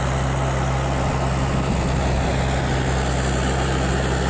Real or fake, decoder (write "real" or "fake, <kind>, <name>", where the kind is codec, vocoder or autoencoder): real